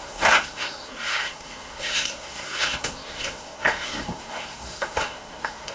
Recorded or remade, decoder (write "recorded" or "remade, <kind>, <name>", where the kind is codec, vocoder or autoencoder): remade, codec, SNAC